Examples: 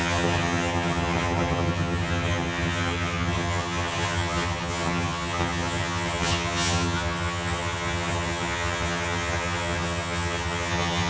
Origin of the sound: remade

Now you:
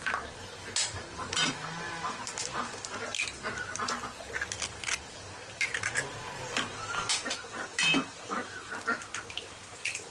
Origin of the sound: recorded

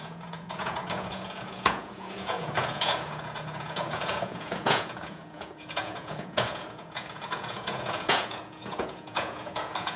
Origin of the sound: remade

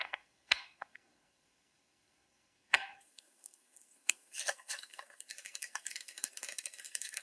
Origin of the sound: remade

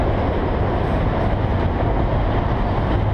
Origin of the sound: recorded